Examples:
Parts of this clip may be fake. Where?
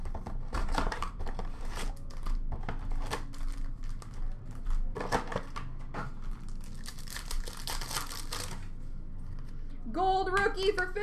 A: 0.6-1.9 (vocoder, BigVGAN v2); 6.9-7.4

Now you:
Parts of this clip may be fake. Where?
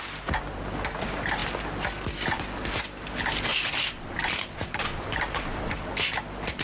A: 3.5-5.9 (vocoder, BigVGAN v2)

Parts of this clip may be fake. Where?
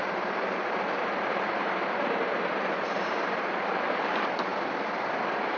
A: 0.0-4.5 (vocoder, BigVGAN v2); 5.0-5.6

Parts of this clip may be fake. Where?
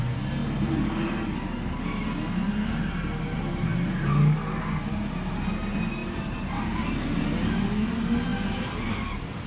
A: 6.0-7.2 (vocoder, BigVGAN v2)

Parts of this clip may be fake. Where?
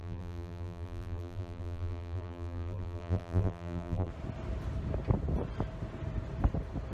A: 0.0-4.1 (vocoder, BigVGAN v2)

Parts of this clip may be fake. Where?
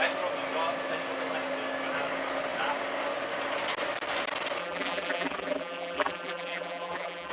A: 4.6-7.3 (vocoder, BigVGAN v2)